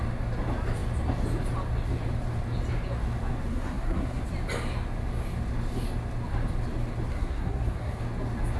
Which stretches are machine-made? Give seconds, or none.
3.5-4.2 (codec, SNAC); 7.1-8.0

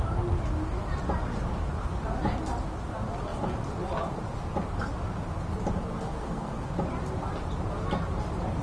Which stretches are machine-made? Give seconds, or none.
5.9-6.7 (codec, SNAC)

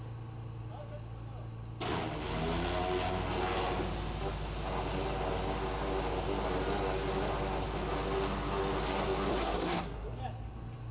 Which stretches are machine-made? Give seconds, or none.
9.3-10.2 (codec, SNAC)

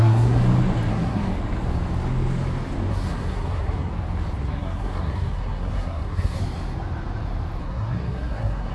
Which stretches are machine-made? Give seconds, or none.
0.0-0.4 (codec, SNAC); 0.9-1.3; 2.9-3.9; 4.4-6.4; 7.6-8.7

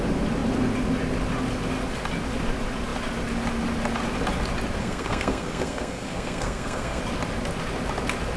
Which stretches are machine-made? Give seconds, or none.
4.8-7.0 (codec, SNAC)

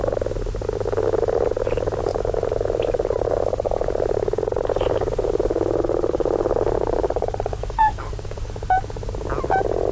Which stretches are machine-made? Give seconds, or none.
7.6-8.5 (codec, SNAC)

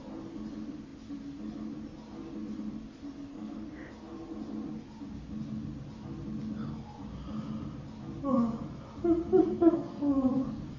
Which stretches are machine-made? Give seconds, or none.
3.3-3.9 (codec, SNAC); 9.4-10.3

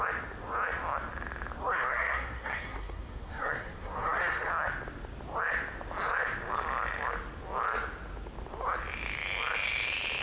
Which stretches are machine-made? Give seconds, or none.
1.6-4.5 (codec, SNAC)